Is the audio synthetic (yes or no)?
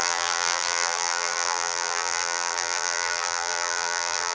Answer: yes